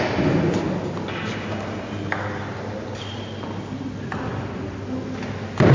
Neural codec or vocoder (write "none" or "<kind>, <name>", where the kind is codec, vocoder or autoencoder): none